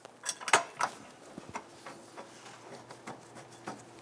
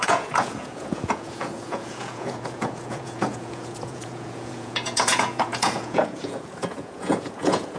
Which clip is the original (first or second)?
first